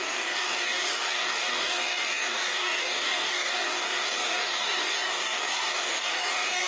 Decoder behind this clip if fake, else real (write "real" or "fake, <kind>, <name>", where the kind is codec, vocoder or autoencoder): fake, codec, DAC